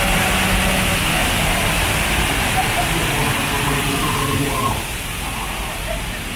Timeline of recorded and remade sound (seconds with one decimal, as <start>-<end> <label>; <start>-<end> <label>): 0.0-1.2 recorded; 1.2-5.0 remade; 5.0-6.4 recorded